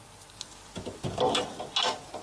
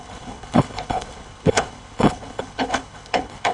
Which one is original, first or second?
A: first